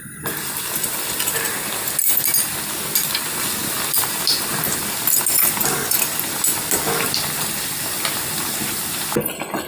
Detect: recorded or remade recorded